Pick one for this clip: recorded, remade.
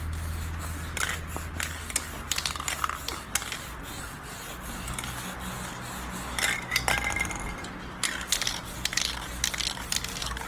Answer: recorded